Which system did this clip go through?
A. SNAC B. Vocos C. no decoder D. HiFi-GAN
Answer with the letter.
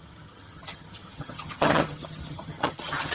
D